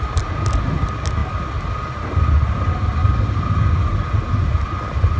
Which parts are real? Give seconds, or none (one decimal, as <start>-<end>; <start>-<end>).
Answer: 0.0-5.2